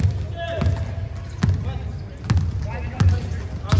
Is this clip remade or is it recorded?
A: recorded